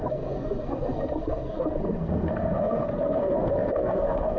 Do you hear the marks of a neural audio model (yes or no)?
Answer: yes